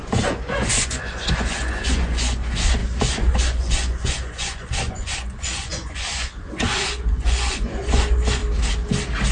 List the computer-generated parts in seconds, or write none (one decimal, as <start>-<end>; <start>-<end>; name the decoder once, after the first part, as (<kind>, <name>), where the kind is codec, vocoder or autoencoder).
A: 0.0-8.4 (vocoder, Vocos)